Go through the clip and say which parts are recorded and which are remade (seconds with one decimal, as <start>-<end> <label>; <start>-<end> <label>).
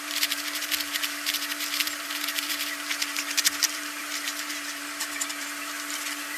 0.0-6.4 remade